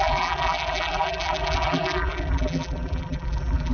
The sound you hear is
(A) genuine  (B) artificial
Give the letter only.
B